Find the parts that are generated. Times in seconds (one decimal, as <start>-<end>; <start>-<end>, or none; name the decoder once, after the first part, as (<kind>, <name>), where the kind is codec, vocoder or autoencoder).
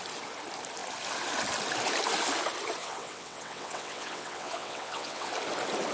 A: 2.8-5.3 (vocoder, WaveNeXt)